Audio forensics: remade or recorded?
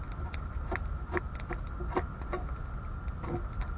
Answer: recorded